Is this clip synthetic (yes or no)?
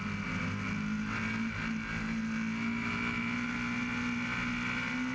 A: no